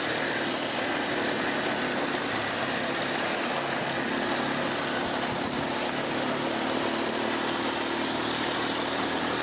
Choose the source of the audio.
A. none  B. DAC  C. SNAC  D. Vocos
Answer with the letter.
A